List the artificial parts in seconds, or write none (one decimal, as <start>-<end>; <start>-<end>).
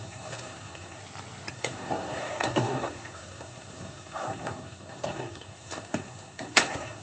0.0-1.0; 1.5-7.0